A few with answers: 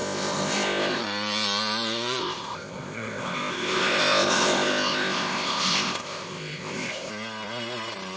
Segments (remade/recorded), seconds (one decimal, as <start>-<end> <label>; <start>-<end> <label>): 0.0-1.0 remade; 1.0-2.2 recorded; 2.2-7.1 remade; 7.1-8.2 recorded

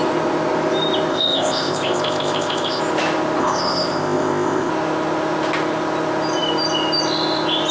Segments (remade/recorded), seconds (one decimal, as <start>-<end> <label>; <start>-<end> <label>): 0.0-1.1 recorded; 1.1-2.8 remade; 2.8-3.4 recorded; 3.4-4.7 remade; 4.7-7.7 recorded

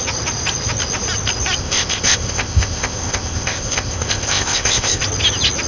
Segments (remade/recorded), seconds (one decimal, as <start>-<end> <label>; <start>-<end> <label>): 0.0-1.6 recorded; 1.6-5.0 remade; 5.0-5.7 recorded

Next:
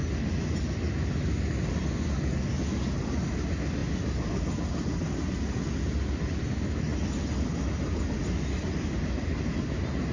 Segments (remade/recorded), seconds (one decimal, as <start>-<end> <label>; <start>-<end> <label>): 0.0-10.1 recorded

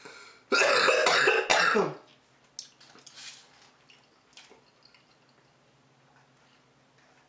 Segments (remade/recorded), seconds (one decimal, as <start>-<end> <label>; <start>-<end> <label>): 0.0-7.3 recorded